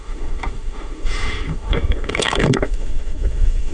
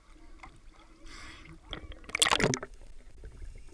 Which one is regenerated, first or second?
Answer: first